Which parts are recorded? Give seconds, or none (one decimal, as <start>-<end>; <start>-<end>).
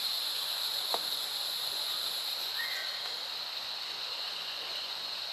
2.8-3.6